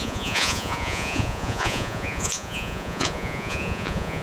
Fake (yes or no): yes